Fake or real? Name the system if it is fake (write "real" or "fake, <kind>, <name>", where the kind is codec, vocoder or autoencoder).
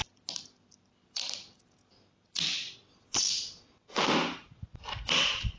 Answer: real